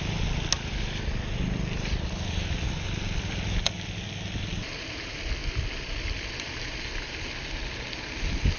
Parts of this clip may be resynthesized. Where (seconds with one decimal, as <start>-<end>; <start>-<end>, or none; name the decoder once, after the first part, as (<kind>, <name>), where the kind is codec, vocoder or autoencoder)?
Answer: none